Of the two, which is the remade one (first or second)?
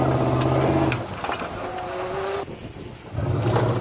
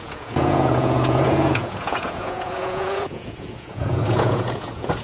second